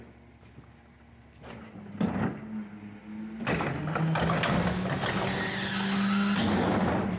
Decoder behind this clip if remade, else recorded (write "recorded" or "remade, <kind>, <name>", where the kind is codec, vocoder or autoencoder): recorded